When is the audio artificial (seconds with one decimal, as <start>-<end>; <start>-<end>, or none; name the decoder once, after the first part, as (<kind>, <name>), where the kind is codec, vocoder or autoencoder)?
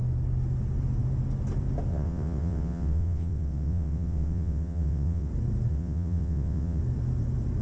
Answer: 1.9-5.3 (vocoder, WaveNeXt); 5.7-6.8